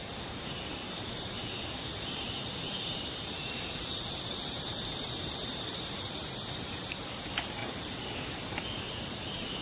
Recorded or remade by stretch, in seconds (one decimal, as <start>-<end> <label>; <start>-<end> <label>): 0.0-7.6 remade; 7.6-9.6 recorded

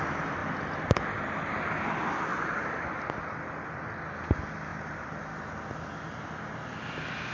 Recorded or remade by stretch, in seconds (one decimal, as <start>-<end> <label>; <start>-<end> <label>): 0.0-2.3 recorded; 2.3-3.1 remade; 3.1-4.7 recorded; 4.7-5.2 remade; 5.2-7.3 recorded

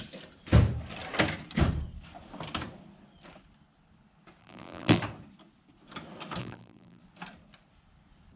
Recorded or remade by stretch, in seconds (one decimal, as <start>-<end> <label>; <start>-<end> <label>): 0.0-4.4 recorded; 4.4-5.0 remade; 5.0-6.4 recorded; 6.4-7.0 remade; 7.0-8.4 recorded

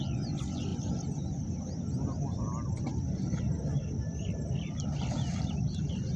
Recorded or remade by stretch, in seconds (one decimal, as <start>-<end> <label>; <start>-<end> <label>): 0.0-0.7 recorded; 0.7-3.4 remade; 3.4-4.1 recorded; 4.1-5.5 remade; 5.5-6.2 recorded

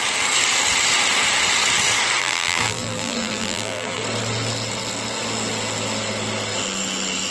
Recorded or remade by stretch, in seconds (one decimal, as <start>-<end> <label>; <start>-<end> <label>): 0.0-2.2 recorded; 2.2-4.0 remade; 4.0-7.3 recorded